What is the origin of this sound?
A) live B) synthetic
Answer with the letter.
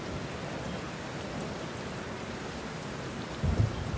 A